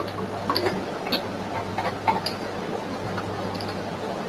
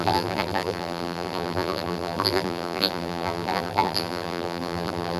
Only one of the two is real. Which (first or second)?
first